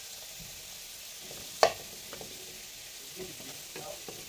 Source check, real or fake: real